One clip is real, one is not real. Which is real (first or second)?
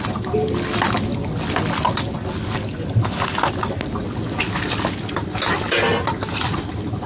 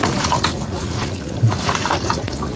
first